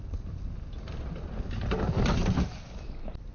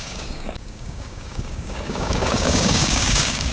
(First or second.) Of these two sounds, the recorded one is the first